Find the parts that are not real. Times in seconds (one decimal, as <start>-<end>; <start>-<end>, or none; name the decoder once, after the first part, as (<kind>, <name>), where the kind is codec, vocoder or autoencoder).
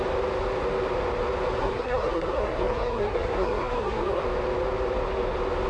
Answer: 1.6-4.2 (codec, SNAC)